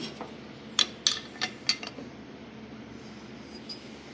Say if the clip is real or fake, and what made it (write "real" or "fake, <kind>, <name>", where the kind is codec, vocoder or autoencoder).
real